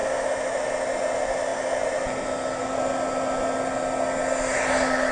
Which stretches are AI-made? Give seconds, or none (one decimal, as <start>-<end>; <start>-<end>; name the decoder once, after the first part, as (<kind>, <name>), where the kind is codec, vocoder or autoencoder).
none